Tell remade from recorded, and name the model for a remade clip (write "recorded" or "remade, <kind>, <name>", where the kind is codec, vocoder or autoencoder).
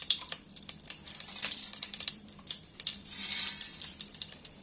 remade, vocoder, BigVGAN v2